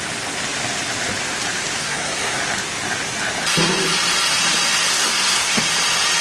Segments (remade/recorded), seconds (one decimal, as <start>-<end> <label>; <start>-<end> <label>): 0.0-1.8 recorded; 1.8-2.4 remade; 2.4-4.9 recorded; 4.9-5.6 remade; 5.6-6.2 recorded